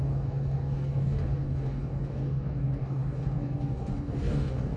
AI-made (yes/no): yes